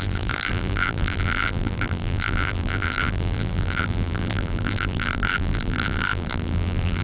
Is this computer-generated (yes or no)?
yes